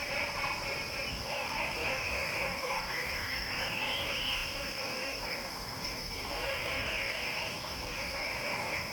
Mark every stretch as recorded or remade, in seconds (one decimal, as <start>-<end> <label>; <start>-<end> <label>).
0.0-1.1 recorded; 1.1-8.9 remade